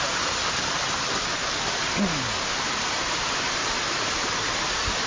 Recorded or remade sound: recorded